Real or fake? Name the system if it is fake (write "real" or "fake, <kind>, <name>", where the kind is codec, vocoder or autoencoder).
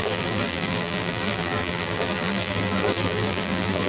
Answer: fake, vocoder, BigVGAN v2